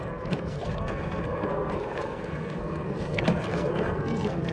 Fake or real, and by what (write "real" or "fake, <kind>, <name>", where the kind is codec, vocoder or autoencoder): fake, codec, SNAC